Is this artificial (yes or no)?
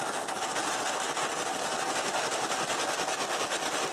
no